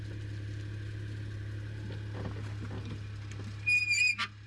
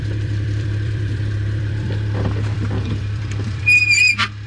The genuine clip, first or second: first